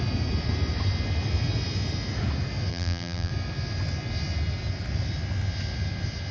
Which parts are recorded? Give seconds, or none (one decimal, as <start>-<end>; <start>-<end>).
0.0-2.7; 3.3-6.3